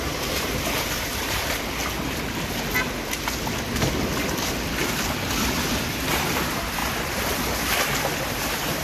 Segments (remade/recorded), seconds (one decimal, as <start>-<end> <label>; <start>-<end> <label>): 0.0-1.8 remade; 1.8-5.8 recorded; 5.8-6.8 remade; 6.8-8.3 recorded; 8.3-8.8 remade